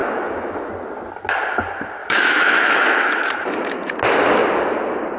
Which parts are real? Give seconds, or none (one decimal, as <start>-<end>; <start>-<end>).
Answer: 0.7-2.0; 3.9-5.2